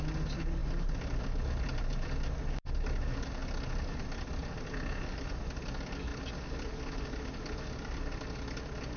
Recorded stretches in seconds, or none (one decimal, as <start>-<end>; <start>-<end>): 0.0-9.0